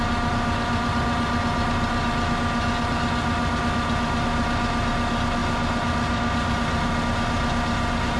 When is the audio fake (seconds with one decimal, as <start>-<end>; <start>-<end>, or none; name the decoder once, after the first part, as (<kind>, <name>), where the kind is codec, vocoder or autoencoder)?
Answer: none